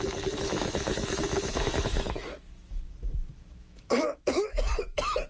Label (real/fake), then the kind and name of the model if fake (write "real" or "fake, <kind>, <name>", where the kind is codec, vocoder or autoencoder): fake, autoencoder, DAC-VAE